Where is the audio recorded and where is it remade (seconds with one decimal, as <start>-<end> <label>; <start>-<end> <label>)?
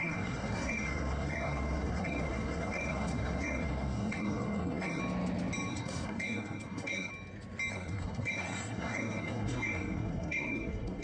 0.0-5.0 remade; 5.0-5.7 recorded; 5.7-7.1 remade; 7.1-7.7 recorded; 7.7-11.0 remade